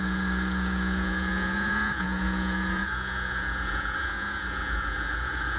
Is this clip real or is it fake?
fake